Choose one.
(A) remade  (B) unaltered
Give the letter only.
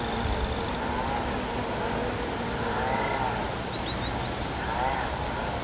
B